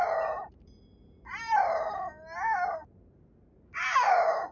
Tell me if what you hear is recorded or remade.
remade